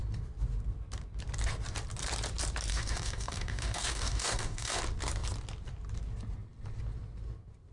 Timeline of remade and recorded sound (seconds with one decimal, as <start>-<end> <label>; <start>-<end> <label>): 0.0-2.7 recorded; 2.7-4.7 remade; 4.7-7.7 recorded